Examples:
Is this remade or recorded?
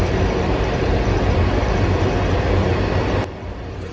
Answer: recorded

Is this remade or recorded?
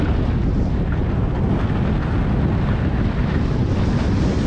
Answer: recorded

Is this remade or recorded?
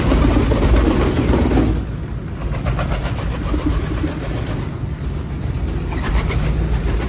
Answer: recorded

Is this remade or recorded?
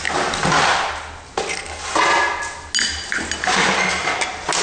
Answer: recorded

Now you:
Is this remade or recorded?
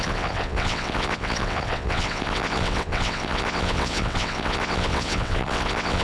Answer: remade